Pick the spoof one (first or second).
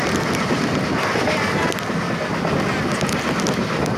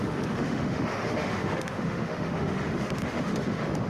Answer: second